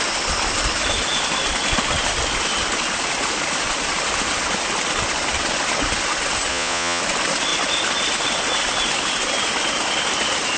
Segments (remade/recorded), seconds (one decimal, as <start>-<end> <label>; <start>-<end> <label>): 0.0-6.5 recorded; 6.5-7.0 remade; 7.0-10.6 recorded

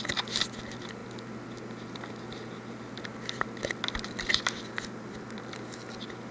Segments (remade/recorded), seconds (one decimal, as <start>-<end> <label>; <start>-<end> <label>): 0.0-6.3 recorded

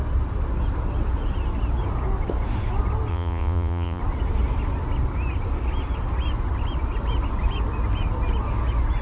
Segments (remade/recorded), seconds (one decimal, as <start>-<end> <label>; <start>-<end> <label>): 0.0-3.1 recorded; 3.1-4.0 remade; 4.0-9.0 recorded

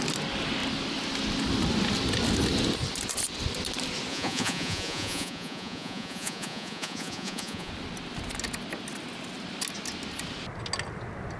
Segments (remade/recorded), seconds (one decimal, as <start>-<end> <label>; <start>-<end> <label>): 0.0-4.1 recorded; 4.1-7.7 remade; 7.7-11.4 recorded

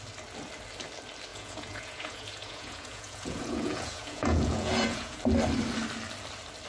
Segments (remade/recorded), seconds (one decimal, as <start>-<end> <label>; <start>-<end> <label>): 0.0-1.3 recorded; 1.3-5.2 remade; 5.2-6.7 recorded

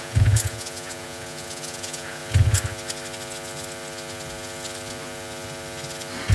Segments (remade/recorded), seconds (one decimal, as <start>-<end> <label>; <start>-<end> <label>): 0.0-2.2 remade; 2.2-6.3 recorded

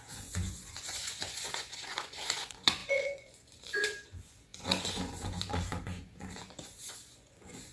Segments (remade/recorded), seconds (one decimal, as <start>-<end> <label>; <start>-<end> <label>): 0.0-7.7 remade

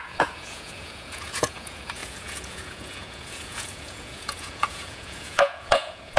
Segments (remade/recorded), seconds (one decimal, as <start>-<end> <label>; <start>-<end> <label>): 0.0-6.2 remade